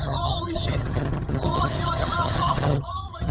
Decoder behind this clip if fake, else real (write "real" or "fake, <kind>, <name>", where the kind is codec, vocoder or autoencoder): fake, vocoder, HiFi-GAN